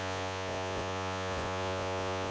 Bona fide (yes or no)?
no